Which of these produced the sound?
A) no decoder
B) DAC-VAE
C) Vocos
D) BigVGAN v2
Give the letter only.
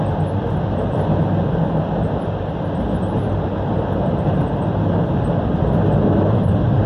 A